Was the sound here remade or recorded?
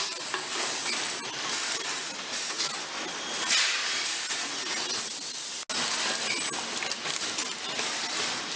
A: recorded